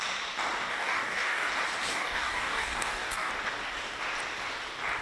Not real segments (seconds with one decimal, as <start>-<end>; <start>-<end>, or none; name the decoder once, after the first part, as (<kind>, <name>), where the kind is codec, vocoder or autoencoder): 0.7-1.5 (codec, DAC); 1.9-3.3